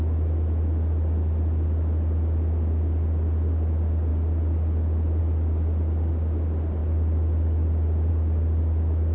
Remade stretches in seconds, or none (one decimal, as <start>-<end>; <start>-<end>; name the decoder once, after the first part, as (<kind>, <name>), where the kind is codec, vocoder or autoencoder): none

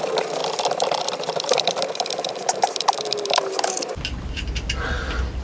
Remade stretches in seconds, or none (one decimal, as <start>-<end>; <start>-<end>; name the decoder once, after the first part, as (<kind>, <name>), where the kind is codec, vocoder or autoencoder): 0.0-5.4 (vocoder, BigVGAN v2)

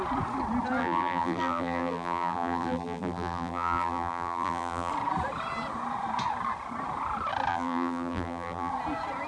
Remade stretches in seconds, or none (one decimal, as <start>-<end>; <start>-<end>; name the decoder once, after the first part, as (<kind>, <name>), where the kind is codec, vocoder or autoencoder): 0.8-4.9 (vocoder, BigVGAN v2); 7.5-8.7

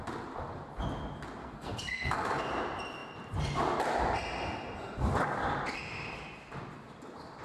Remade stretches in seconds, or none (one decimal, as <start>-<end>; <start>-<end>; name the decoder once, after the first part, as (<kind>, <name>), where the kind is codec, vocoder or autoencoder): 1.4-2.5 (codec, SNAC)

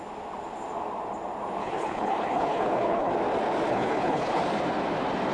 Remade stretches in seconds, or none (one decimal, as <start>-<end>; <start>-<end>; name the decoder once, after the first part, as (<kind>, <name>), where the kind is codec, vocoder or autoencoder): 1.6-3.1 (codec, HILCodec); 3.7-4.4